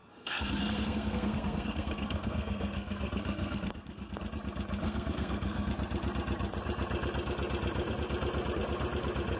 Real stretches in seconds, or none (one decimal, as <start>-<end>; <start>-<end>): 4.1-4.8; 5.7-9.4